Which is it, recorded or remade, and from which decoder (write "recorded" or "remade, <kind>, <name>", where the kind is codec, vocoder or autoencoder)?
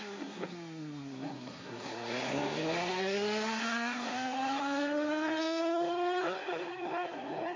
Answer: remade, codec, SNAC